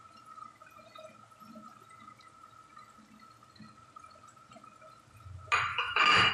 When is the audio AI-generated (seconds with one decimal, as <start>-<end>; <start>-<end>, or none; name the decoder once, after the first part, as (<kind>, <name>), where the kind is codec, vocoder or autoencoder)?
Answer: 5.7-6.3 (autoencoder, DAC-VAE)